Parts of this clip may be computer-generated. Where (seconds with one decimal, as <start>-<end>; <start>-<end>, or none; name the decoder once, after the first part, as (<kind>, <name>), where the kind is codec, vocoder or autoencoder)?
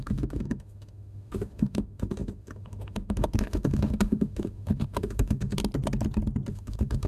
0.0-5.6 (autoencoder, DAC-VAE); 6.5-7.1